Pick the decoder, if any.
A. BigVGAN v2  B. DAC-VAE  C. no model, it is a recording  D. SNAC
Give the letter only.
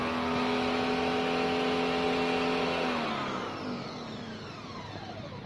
C